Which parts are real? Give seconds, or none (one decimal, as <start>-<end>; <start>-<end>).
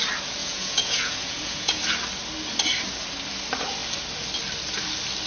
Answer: 0.0-0.4; 1.8-5.3